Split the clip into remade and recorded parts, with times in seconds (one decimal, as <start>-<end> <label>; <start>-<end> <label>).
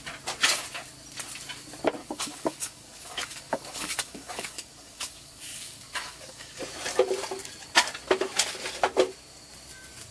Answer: 0.0-2.0 recorded; 2.0-6.6 remade; 6.6-10.1 recorded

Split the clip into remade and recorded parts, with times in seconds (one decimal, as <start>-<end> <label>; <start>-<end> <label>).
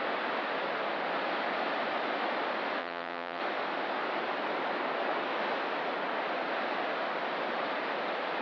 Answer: 0.0-2.8 recorded; 2.8-3.4 remade; 3.4-8.4 recorded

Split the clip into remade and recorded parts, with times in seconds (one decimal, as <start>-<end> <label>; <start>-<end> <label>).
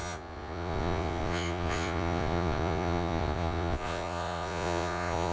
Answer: 0.0-5.3 remade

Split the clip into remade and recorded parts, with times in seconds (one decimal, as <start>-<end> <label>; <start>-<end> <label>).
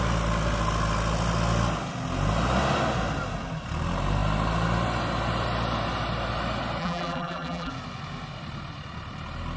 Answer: 0.0-6.8 recorded; 6.8-7.7 remade; 7.7-9.6 recorded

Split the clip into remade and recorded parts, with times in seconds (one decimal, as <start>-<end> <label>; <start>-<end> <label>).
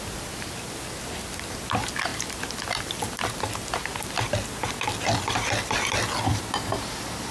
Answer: 0.0-6.3 recorded; 6.3-7.3 remade